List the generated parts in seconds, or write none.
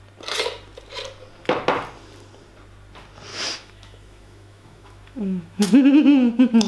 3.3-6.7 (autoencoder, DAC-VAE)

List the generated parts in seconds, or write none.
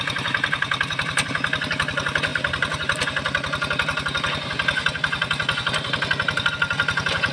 none